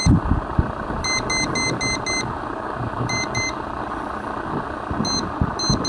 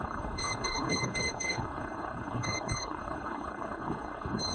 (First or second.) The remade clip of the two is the second